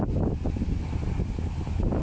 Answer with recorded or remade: recorded